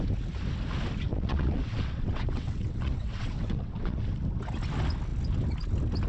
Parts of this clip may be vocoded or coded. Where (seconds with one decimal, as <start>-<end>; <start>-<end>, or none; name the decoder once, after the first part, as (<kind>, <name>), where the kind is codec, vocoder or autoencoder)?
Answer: 1.1-4.0 (vocoder, WaveNeXt)